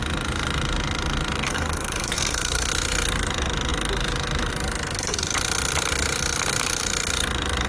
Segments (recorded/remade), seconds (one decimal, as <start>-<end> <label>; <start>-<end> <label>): 0.0-1.5 recorded; 1.5-2.7 remade; 2.7-7.7 recorded